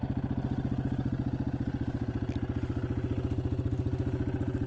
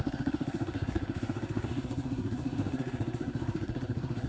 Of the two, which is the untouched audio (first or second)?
first